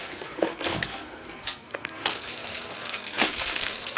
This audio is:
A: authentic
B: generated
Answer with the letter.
B